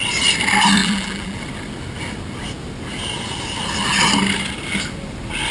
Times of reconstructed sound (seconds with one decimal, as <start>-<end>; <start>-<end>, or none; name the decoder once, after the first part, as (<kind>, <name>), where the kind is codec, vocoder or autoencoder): 0.8-1.4 (vocoder, BigVGAN v2)